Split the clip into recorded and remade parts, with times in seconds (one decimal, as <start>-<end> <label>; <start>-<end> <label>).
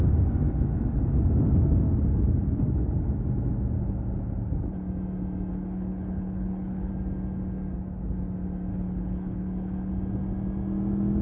0.0-5.5 recorded; 5.5-6.9 remade; 6.9-8.7 recorded; 8.7-9.9 remade; 9.9-11.2 recorded